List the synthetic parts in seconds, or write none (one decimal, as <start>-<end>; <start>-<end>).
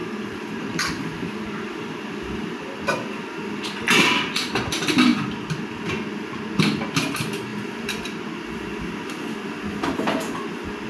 0.0-4.3; 7.5-9.3